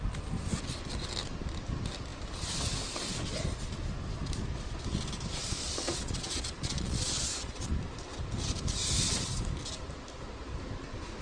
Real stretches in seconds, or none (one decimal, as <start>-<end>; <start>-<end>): 0.0-5.4; 7.7-11.2

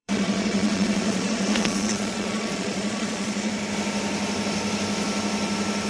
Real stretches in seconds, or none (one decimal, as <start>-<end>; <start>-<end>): 3.5-5.9

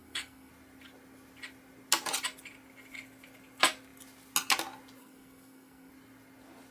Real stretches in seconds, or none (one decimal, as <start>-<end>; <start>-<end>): 0.5-5.0; 5.9-6.7

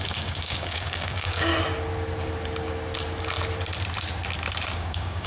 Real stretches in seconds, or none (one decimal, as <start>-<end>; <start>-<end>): 1.5-4.7

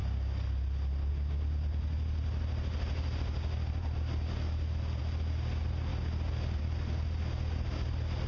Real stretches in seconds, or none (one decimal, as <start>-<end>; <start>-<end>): 0.0-8.3

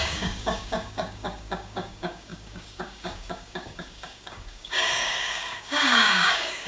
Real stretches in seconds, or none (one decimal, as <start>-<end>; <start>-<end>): none

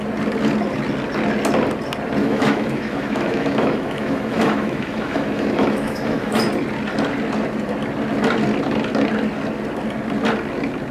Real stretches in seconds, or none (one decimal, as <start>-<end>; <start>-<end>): 0.0-2.2; 6.4-10.9